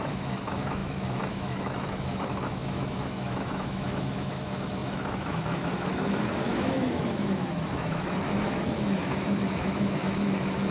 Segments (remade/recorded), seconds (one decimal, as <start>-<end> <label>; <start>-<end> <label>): 0.0-10.7 remade